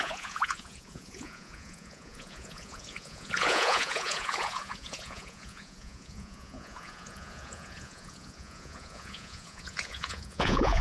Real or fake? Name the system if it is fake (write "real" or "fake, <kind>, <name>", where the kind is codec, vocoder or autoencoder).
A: fake, vocoder, Vocos